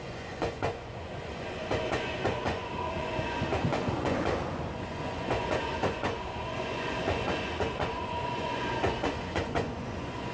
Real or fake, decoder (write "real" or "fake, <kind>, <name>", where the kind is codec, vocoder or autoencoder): fake, vocoder, Vocos